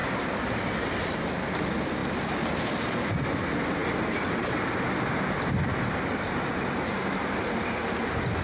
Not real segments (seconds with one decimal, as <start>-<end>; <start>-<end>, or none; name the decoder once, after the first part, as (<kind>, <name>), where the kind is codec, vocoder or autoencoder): none